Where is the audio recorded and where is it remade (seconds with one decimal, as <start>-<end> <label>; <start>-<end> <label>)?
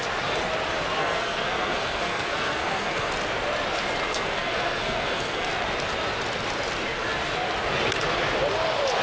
0.0-1.0 recorded; 1.0-3.1 remade; 3.1-4.1 recorded; 4.1-5.5 remade; 5.5-9.0 recorded